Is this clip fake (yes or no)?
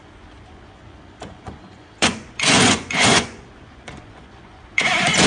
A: yes